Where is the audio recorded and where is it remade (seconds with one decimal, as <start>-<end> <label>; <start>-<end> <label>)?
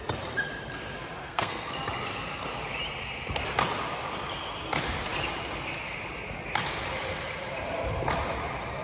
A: 0.0-1.2 recorded; 1.2-1.7 remade; 1.7-8.8 recorded